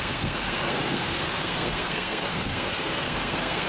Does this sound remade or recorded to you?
remade